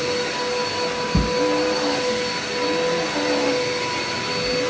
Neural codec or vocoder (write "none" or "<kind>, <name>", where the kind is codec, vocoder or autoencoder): none